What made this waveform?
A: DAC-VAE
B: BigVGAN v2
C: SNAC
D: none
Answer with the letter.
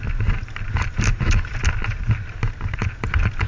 D